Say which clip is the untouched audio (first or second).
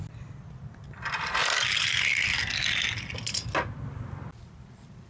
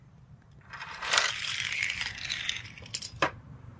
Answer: first